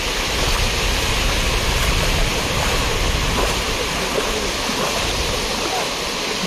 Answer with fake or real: real